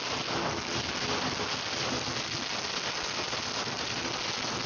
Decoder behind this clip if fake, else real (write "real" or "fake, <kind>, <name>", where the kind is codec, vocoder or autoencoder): real